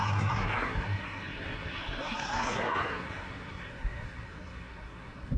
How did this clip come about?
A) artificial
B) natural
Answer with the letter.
A